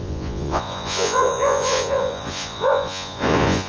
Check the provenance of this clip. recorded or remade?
remade